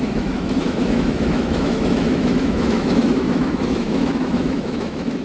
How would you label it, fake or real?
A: fake